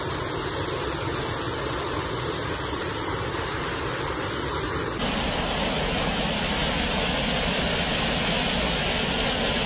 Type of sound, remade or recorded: recorded